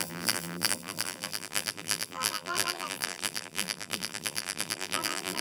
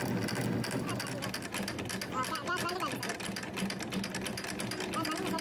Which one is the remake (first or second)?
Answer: first